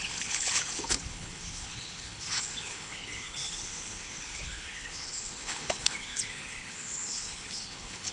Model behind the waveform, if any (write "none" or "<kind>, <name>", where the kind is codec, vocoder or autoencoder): codec, HILCodec